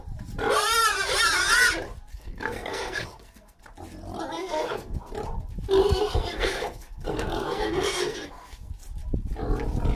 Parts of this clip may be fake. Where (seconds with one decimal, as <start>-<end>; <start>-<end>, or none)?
2.1-3.6; 4.3-5.1; 5.8-8.7